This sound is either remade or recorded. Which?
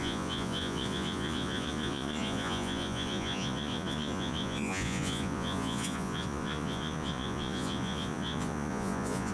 remade